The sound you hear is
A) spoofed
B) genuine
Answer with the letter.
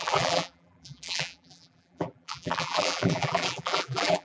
A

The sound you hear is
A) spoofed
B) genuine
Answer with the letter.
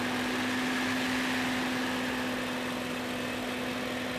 B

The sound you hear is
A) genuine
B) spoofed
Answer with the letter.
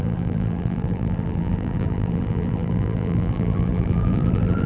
B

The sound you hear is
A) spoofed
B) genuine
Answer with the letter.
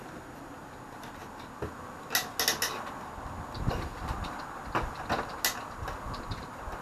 B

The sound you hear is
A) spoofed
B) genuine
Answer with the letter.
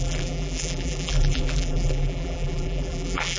A